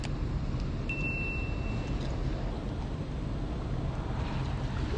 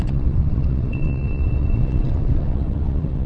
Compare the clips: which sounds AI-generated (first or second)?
second